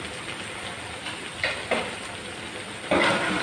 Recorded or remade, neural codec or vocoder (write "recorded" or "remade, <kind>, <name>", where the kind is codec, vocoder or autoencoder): recorded